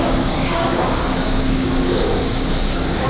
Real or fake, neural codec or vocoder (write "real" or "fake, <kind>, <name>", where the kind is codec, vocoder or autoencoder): fake, codec, DAC